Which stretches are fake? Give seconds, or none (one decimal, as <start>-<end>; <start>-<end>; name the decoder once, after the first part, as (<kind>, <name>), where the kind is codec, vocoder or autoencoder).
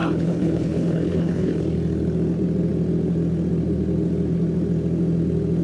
0.0-1.6 (codec, HILCodec)